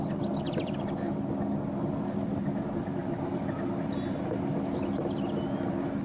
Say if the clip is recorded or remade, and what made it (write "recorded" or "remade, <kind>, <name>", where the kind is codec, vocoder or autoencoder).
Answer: recorded